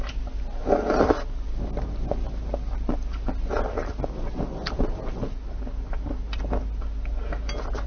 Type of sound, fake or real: real